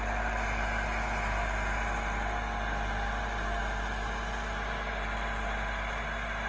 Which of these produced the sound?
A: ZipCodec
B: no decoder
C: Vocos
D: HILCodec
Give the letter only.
B